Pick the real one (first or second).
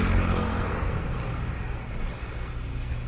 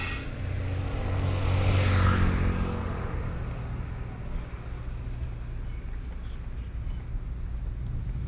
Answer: second